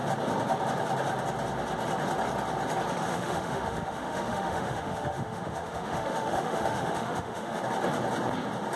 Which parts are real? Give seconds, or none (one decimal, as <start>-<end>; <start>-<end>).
0.0-3.1; 7.6-8.8